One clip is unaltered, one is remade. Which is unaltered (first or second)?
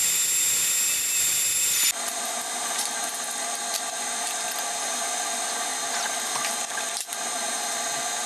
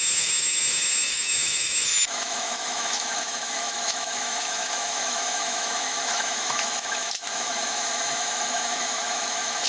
first